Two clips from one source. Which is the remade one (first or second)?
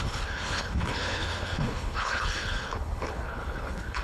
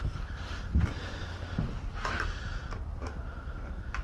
first